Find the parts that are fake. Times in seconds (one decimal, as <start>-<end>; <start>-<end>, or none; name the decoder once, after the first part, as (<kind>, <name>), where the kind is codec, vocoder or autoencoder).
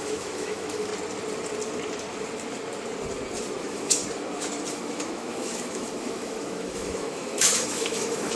0.0-0.9 (autoencoder, DAC-VAE); 3.6-4.0; 4.7-8.4